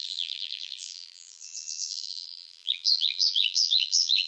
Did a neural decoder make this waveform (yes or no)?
yes